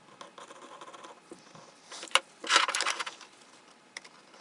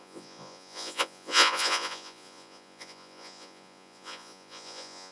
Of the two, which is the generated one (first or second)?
second